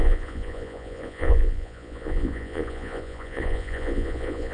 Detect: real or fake fake